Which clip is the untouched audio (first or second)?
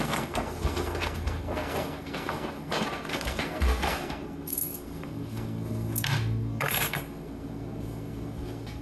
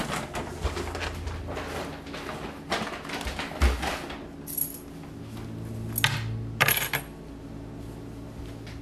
second